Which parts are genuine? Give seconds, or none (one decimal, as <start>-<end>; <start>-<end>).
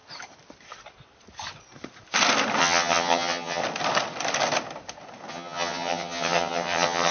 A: 0.0-2.6; 3.6-5.3